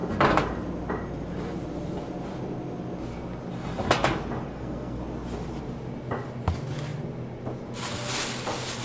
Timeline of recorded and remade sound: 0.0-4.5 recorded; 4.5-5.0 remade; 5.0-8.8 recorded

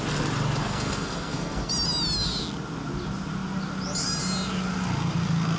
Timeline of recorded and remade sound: 0.0-0.6 recorded; 0.6-1.7 remade; 1.7-5.6 recorded

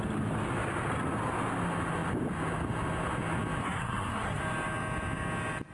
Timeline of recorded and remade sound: 0.0-3.6 recorded; 3.6-4.4 remade; 4.4-5.7 recorded

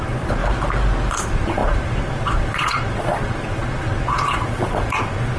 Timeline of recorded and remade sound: 0.0-0.4 remade; 0.4-1.1 recorded; 1.1-5.4 remade

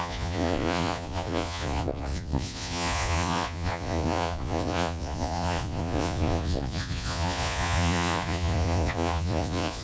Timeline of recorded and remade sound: 0.0-9.8 remade

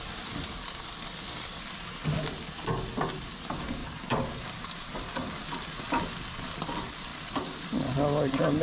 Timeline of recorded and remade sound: 0.0-8.6 recorded

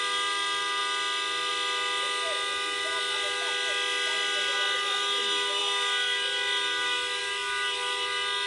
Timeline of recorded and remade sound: 0.0-8.5 recorded

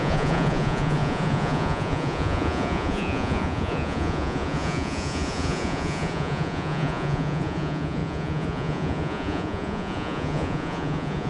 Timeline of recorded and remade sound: 0.0-11.3 remade